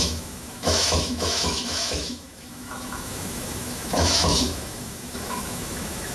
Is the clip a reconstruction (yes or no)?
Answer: yes